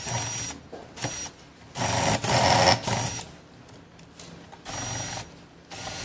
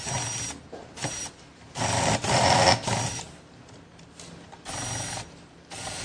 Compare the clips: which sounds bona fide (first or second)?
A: first